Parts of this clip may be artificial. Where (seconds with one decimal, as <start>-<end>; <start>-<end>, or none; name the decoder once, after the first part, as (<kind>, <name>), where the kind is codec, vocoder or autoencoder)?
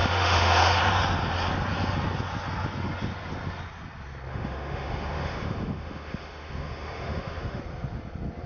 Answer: 0.0-0.8 (autoencoder, DAC-VAE); 4.3-7.6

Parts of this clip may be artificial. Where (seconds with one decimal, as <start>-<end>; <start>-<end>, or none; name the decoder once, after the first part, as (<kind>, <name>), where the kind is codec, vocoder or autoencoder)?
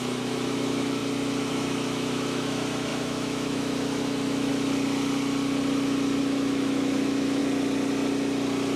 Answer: 0.0-1.0 (autoencoder, DAC-VAE); 1.5-4.5; 6.2-7.4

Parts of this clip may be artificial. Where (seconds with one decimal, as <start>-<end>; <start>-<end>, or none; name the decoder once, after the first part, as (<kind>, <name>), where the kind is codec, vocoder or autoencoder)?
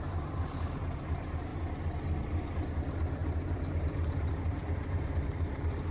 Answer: 0.0-1.5 (vocoder, BigVGAN v2); 2.7-5.9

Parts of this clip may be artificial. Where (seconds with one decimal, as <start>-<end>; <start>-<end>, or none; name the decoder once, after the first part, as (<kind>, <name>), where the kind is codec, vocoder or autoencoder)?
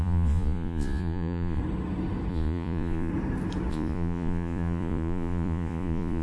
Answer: 0.0-1.6 (vocoder, Vocos); 2.3-3.1; 3.7-6.2